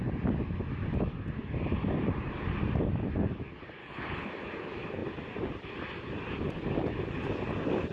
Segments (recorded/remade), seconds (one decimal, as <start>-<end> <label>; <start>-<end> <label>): 0.0-3.8 recorded; 3.8-4.3 remade; 4.3-7.9 recorded